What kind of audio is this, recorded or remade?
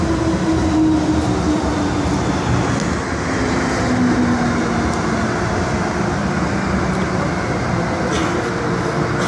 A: recorded